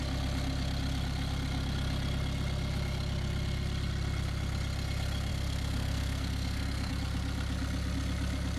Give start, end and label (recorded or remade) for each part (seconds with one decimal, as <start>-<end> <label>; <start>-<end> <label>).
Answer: 0.0-5.3 recorded; 5.3-6.9 remade; 6.9-8.6 recorded